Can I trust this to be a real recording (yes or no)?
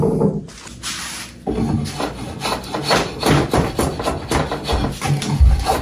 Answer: yes